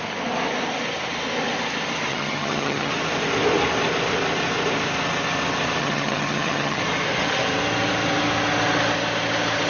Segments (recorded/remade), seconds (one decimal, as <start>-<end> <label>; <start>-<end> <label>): 0.0-2.1 recorded; 2.1-2.9 remade; 2.9-5.8 recorded; 5.8-6.8 remade; 6.8-9.7 recorded